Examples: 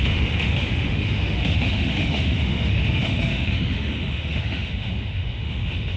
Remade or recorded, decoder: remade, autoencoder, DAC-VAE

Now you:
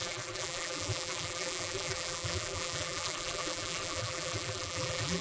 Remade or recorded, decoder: remade, vocoder, BigVGAN v2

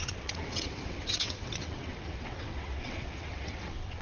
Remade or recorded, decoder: remade, vocoder, WaveNeXt